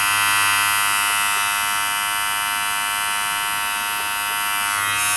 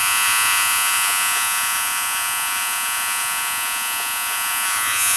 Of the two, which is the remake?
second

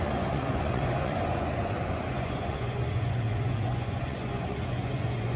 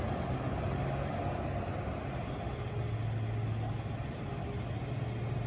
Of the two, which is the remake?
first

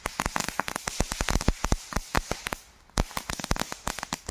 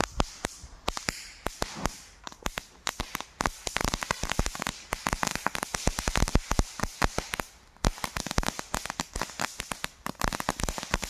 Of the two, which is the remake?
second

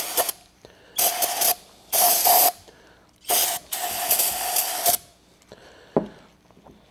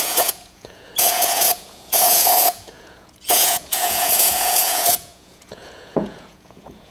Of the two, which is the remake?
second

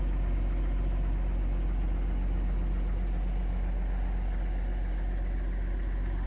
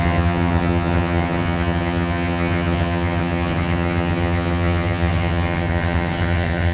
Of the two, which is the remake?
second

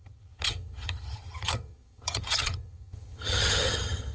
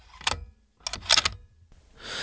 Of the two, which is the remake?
first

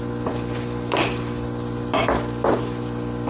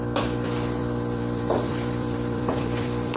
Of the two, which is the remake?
second